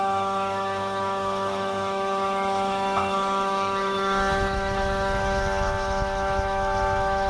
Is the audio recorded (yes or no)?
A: no